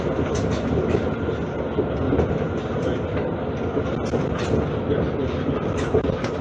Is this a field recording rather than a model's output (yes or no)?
yes